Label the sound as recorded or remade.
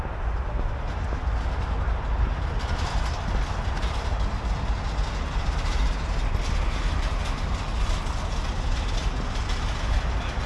recorded